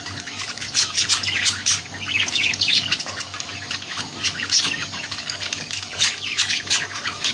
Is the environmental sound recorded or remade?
remade